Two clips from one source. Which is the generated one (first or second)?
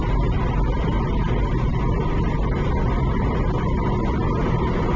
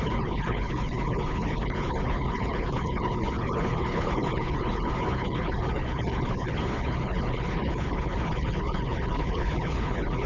second